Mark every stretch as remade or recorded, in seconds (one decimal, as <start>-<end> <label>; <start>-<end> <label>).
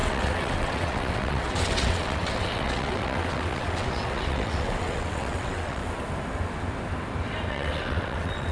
0.0-5.8 remade; 5.8-7.5 recorded; 7.5-8.5 remade